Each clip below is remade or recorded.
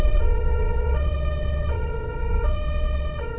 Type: remade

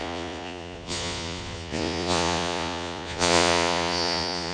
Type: remade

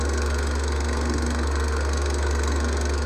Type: remade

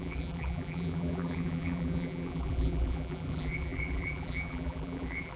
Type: remade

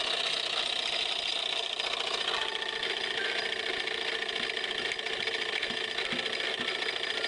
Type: recorded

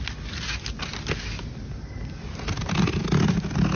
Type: recorded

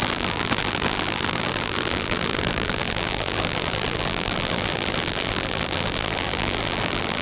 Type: remade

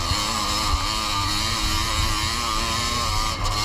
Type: recorded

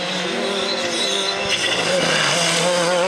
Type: recorded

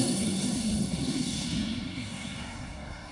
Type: remade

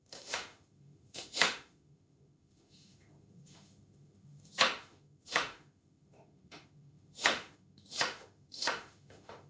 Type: remade